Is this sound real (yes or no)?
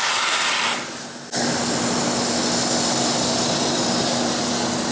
yes